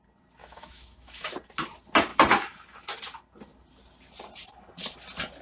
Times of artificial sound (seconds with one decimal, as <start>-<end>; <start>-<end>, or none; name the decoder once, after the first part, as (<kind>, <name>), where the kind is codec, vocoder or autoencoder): 0.4-1.3 (autoencoder, DAC-VAE)